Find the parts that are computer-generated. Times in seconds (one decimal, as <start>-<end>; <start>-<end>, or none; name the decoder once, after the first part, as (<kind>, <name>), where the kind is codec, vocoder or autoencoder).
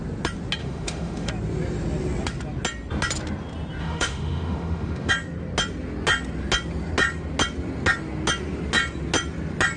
0.6-1.3 (autoencoder, DAC-VAE); 3.8-5.1